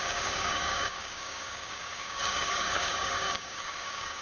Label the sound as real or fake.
fake